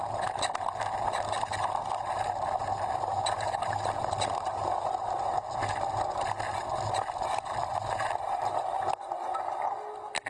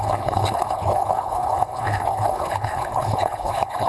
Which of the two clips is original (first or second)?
first